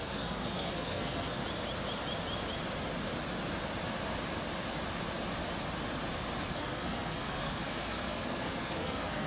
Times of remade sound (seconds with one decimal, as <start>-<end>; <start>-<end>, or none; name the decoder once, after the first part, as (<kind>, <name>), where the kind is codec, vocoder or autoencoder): 0.0-1.4 (codec, SNAC); 6.5-9.3